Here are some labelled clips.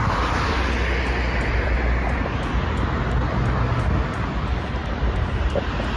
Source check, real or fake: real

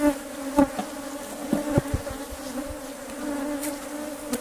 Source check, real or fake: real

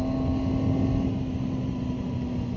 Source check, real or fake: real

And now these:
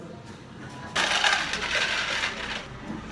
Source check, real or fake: real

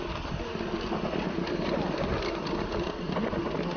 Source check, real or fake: real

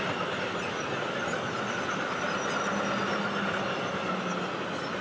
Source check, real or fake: real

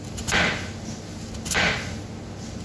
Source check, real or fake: real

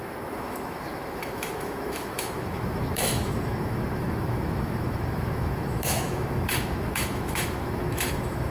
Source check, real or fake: fake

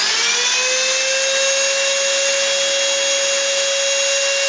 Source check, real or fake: real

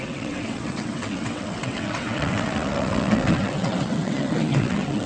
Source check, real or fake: fake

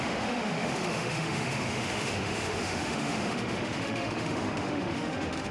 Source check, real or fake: fake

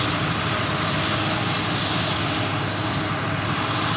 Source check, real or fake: real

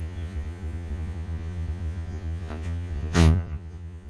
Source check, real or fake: fake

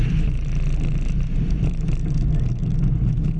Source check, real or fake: real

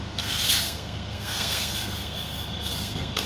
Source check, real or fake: fake